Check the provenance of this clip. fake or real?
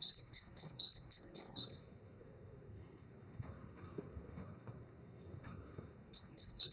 fake